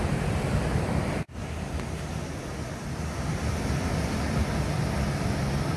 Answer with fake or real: real